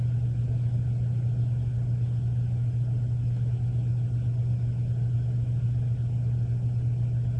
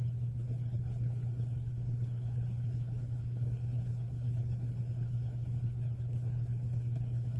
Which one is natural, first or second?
first